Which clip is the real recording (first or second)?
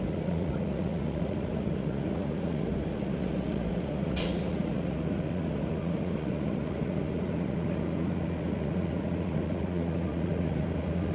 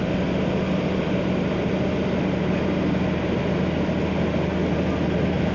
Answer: second